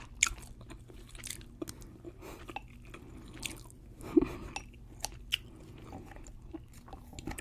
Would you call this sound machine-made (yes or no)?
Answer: no